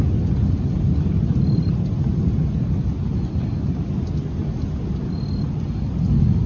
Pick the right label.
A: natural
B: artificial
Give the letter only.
A